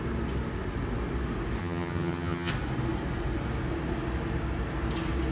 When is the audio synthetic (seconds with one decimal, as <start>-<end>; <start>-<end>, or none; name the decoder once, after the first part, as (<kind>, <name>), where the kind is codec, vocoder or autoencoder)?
1.6-2.5 (vocoder, HiFi-GAN)